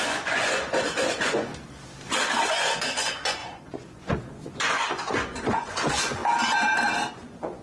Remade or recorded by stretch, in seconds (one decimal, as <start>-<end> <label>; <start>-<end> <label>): 0.0-1.5 remade; 1.5-2.4 recorded; 2.4-6.2 remade; 6.2-7.1 recorded; 7.1-7.6 remade